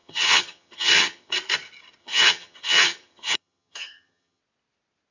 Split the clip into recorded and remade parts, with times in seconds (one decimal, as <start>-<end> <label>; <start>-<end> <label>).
0.0-1.3 remade; 1.3-2.0 recorded; 2.0-4.4 remade; 4.4-5.1 recorded